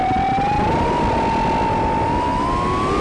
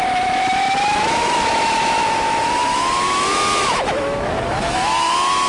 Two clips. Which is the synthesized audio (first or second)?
second